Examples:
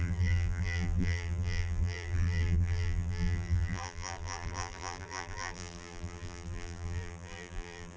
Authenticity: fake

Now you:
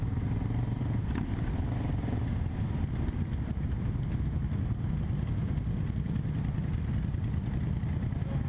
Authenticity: real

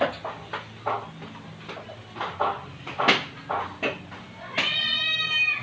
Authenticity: real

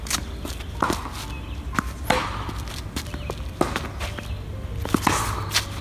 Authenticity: real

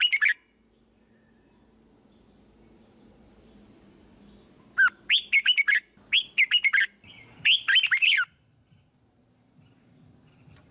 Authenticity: real